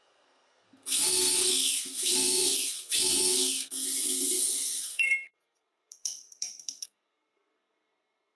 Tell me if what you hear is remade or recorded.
remade